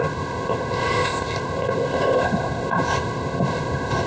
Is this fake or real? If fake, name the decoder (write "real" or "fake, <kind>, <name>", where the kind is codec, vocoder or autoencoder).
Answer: fake, codec, ZipCodec